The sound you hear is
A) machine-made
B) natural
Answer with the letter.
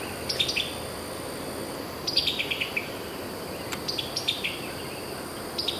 B